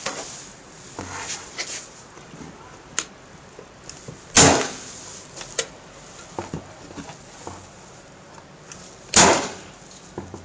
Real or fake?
real